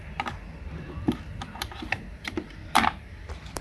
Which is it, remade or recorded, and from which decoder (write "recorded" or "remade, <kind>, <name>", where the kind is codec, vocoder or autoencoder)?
remade, vocoder, BigVGAN v2